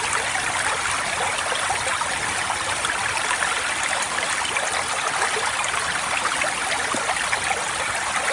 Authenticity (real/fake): real